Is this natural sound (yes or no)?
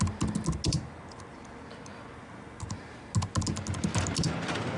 yes